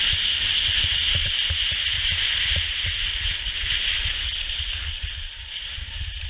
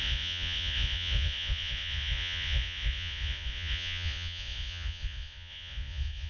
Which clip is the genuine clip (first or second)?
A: first